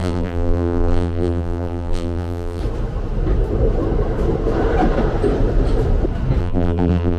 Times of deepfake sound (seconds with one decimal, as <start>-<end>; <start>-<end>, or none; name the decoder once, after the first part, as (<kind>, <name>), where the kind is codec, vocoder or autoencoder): 0.0-2.6 (vocoder, BigVGAN v2); 6.4-7.2